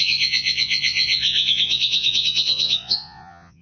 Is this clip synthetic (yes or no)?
yes